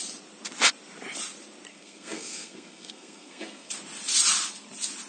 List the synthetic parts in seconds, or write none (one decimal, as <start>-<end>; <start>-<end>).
1.7-3.7